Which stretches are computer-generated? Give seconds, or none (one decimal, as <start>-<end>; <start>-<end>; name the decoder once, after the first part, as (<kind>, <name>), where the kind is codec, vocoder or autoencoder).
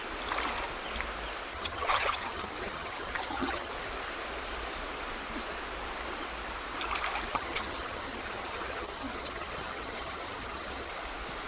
1.5-3.7 (vocoder, HiFi-GAN); 7.3-10.9